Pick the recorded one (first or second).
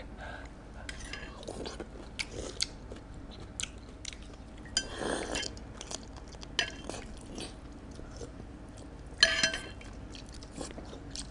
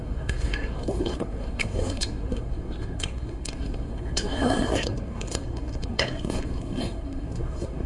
first